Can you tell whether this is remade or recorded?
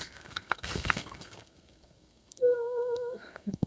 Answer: remade